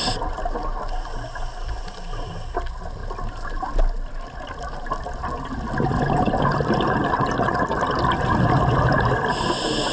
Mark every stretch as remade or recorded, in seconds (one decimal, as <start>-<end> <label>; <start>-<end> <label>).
0.0-9.9 recorded

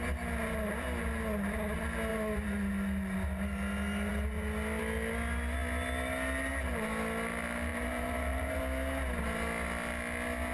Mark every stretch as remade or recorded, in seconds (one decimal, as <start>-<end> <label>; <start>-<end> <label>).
0.0-2.1 recorded; 2.1-2.7 remade; 2.7-7.7 recorded; 7.7-8.6 remade; 8.6-10.5 recorded

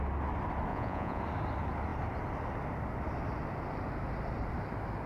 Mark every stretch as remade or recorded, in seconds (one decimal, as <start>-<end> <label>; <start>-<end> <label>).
0.0-0.7 recorded; 0.7-1.2 remade; 1.2-5.1 recorded

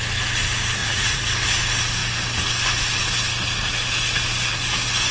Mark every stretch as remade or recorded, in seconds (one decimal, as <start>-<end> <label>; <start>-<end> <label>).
0.0-0.8 recorded; 0.8-1.3 remade; 1.3-5.1 recorded

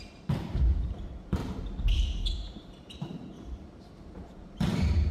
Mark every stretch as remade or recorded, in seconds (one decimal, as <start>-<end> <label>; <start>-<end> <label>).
0.0-1.4 remade; 1.4-2.5 recorded; 2.5-5.1 remade

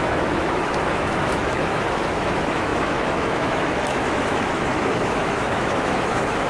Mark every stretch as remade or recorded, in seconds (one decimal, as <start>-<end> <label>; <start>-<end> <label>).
0.0-6.5 remade